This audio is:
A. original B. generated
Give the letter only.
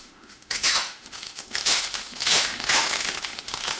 B